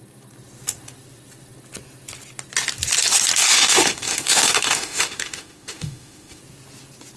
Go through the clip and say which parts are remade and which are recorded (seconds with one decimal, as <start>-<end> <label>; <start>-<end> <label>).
0.0-3.5 recorded; 3.5-6.4 remade; 6.4-7.2 recorded